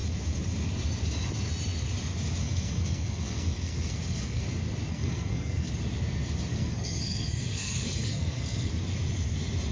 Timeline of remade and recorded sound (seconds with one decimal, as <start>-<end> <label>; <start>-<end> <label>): 0.0-2.4 recorded; 2.4-4.4 remade; 4.4-4.9 recorded; 4.9-5.7 remade; 5.7-6.5 recorded; 6.5-8.7 remade; 8.7-9.7 recorded